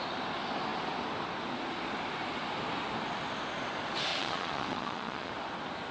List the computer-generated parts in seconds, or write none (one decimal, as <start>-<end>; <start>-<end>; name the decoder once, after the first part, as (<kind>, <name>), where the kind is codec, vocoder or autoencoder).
4.1-5.3 (vocoder, Vocos)